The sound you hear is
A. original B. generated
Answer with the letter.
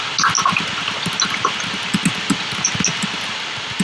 A